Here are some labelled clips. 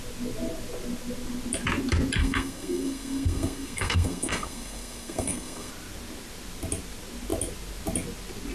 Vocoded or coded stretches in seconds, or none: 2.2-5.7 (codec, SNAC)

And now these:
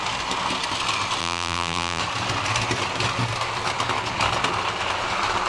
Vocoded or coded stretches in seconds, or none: 1.2-2.0 (vocoder, BigVGAN v2)